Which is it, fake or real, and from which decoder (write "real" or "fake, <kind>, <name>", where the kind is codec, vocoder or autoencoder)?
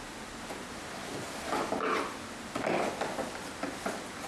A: real